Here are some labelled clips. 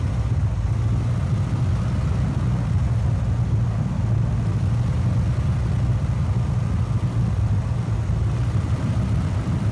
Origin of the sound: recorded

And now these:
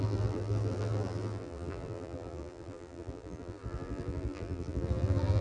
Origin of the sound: remade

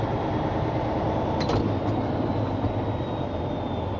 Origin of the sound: remade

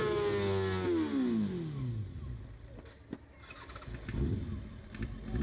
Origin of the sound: recorded